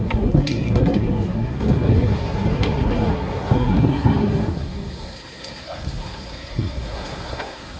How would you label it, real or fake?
fake